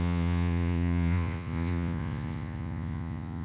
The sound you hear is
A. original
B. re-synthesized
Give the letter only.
B